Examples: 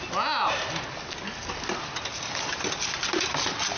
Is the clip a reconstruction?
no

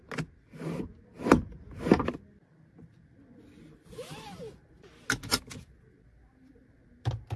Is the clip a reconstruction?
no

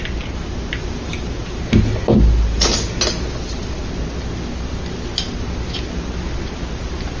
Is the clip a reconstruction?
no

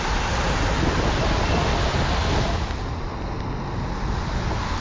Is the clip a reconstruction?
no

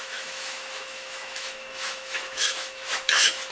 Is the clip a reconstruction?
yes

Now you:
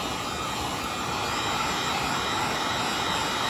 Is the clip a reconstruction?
no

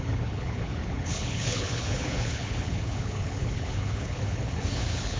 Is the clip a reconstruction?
yes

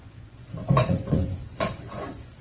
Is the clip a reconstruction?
yes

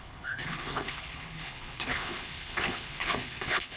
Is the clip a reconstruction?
yes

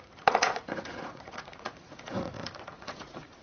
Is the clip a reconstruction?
yes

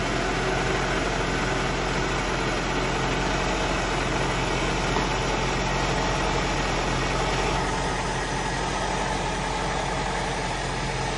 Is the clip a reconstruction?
no